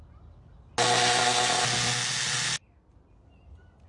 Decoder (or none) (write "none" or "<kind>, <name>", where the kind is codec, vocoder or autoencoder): none